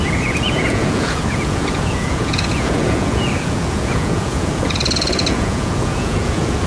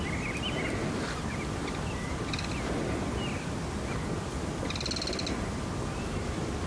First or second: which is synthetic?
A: first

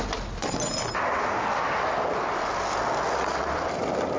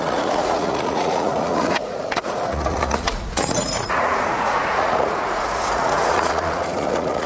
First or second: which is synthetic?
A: second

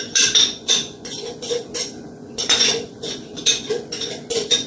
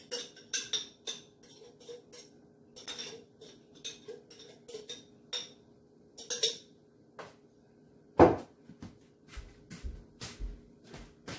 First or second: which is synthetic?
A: first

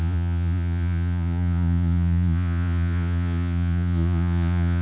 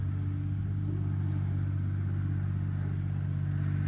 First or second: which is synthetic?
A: first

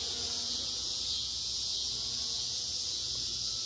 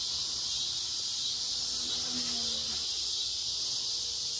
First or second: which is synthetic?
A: first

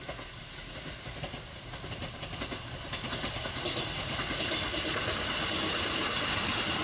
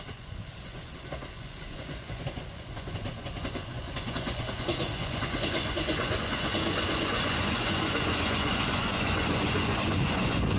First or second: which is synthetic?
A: second